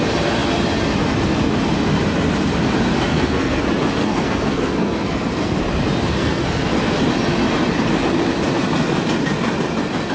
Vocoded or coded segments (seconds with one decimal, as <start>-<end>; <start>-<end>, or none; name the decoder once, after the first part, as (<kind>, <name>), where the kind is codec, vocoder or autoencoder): 3.1-3.6 (codec, SNAC); 4.0-5.6; 6.1-7.0